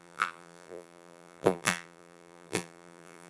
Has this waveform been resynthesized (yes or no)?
yes